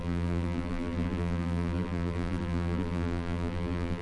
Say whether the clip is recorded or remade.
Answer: remade